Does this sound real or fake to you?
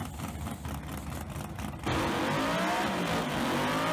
real